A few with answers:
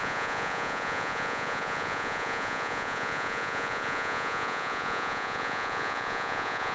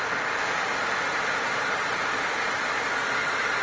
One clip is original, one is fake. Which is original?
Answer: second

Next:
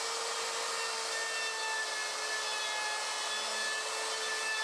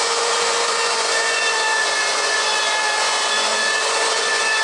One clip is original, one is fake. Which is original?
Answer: first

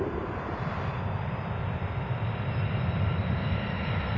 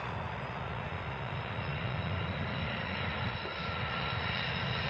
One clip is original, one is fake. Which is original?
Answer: first